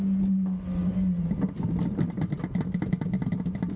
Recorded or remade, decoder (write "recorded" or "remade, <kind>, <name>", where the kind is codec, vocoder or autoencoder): recorded